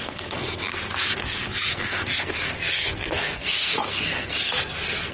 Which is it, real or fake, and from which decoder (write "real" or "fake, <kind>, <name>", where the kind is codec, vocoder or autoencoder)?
fake, codec, SNAC